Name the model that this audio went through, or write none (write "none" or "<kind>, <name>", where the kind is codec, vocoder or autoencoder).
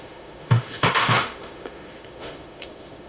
autoencoder, DAC-VAE